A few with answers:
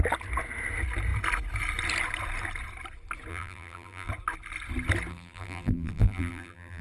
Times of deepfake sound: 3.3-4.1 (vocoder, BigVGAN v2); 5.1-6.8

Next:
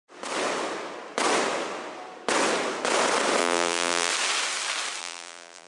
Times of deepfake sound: 3.4-4.1 (vocoder, BigVGAN v2); 5.0-5.7

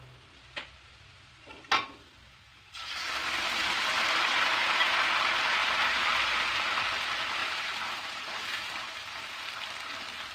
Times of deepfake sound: 2.5-4.0 (vocoder, BigVGAN v2); 5.6-6.9; 7.4-9.5

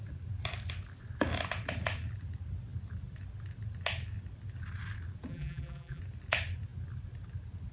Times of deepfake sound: 5.3-6.0 (vocoder, BigVGAN v2)